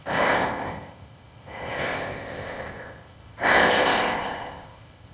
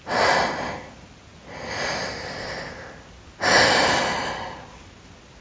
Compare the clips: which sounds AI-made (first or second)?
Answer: first